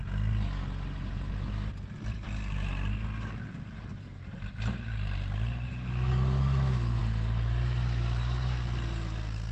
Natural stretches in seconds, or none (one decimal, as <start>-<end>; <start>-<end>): 0.0-5.7; 7.0-9.5